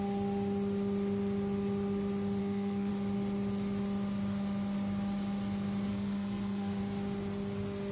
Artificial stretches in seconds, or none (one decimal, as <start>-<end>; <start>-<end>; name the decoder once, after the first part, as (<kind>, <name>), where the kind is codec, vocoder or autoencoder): 2.4-2.9 (codec, SNAC); 5.9-6.8